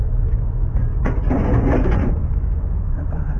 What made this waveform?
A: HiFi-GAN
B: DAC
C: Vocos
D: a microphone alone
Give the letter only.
C